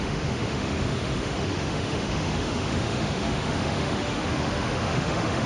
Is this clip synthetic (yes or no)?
yes